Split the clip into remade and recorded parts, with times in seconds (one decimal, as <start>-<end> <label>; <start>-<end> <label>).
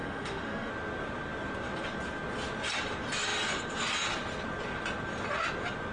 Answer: 0.0-0.7 remade; 0.7-5.9 recorded